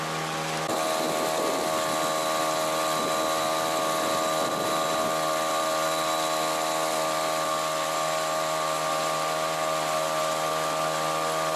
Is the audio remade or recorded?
recorded